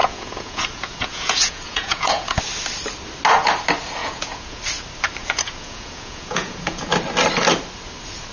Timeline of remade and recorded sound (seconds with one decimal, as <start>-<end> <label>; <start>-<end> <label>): 0.0-2.4 remade; 2.4-4.0 recorded; 4.0-4.6 remade; 4.6-5.2 recorded; 5.2-6.9 remade; 6.9-8.3 recorded